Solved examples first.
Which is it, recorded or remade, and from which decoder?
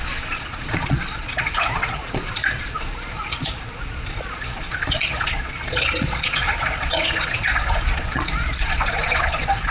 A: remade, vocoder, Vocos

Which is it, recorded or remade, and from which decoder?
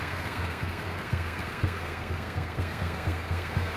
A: remade, codec, SNAC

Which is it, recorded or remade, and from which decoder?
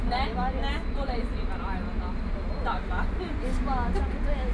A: recorded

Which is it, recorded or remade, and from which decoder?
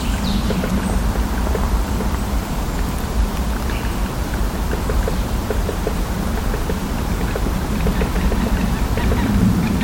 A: remade, vocoder, BigVGAN v2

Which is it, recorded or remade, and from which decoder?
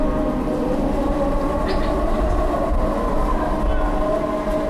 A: recorded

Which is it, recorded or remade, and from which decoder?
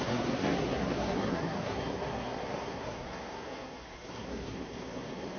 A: remade, codec, SNAC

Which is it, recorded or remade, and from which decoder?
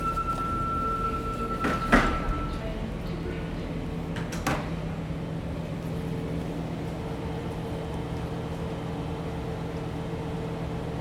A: recorded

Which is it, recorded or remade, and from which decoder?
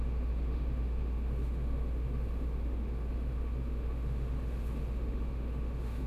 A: remade, autoencoder, DAC-VAE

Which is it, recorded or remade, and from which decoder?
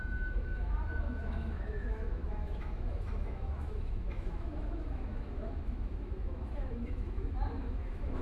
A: remade, autoencoder, DAC-VAE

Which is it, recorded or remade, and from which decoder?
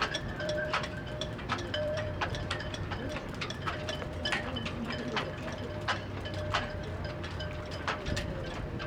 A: remade, vocoder, BigVGAN v2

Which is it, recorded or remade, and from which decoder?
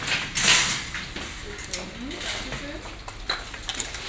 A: recorded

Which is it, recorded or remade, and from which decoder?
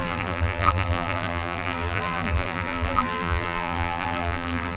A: remade, vocoder, BigVGAN v2